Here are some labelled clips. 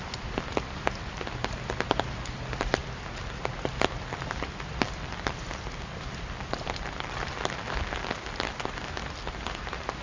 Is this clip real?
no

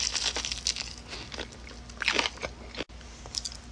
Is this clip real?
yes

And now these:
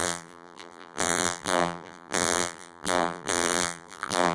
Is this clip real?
no